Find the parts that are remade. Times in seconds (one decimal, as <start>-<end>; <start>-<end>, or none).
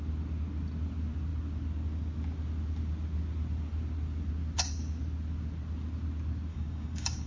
6.5-7.3